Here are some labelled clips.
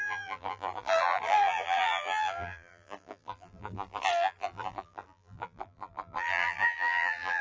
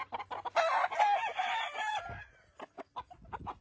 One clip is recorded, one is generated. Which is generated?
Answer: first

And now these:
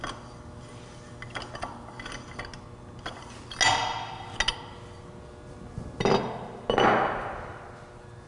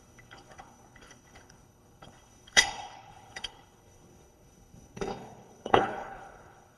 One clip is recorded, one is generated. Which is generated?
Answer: second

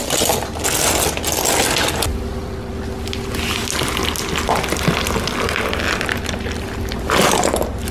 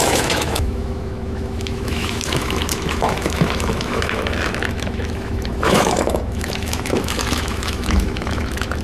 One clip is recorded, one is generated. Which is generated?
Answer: second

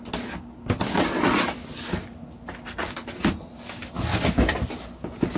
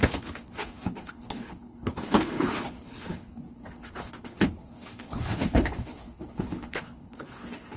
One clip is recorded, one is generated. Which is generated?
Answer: second